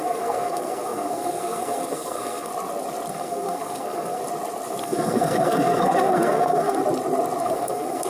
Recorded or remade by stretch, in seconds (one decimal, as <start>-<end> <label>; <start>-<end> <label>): 0.0-2.5 remade; 2.5-3.1 recorded; 3.1-4.2 remade; 4.2-4.8 recorded; 4.8-6.8 remade; 6.8-7.4 recorded; 7.4-8.1 remade